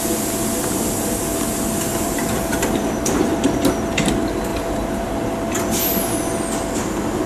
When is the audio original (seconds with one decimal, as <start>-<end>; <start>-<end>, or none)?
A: 0.0-1.9; 3.3-4.5; 5.1-7.3